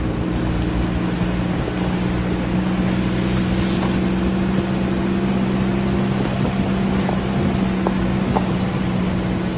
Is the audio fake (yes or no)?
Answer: no